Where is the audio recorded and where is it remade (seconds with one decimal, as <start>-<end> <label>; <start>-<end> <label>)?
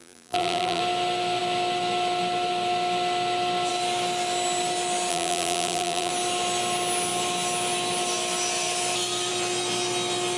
0.0-0.8 remade; 0.8-5.1 recorded; 5.1-6.1 remade; 6.1-10.4 recorded